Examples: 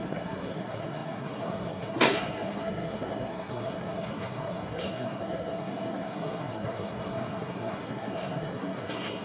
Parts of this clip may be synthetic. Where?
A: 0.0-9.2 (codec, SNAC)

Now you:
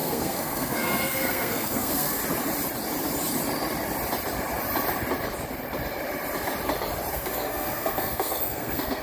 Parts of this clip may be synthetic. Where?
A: 0.0-2.2 (codec, SNAC); 7.1-9.0

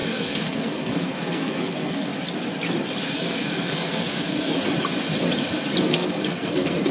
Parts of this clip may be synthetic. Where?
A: 0.0-2.1 (codec, SNAC); 3.1-4.6; 5.9-6.9

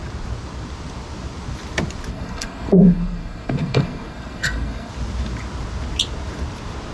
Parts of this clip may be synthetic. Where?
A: 2.1-4.9 (codec, SNAC)

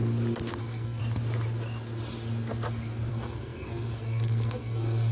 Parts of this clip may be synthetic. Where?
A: 0.6-1.0 (codec, SNAC); 3.1-5.1